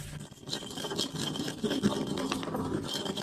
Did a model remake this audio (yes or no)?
no